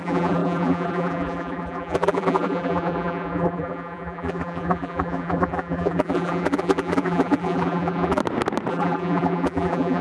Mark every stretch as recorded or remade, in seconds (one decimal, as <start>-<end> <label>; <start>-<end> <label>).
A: 0.0-8.2 remade; 8.2-8.7 recorded; 8.7-10.0 remade